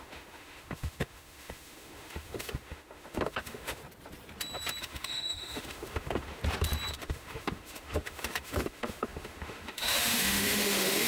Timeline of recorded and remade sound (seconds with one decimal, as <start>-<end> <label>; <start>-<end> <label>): 0.0-3.8 remade; 3.8-4.8 recorded; 4.8-6.4 remade; 6.4-6.9 recorded; 6.9-11.1 remade